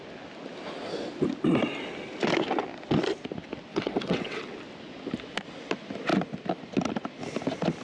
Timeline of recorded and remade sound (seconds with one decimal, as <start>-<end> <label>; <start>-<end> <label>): 0.0-3.7 recorded; 3.7-4.4 remade; 4.4-7.8 recorded